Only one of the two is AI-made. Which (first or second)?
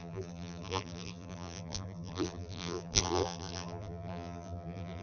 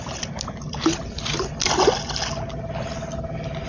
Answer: first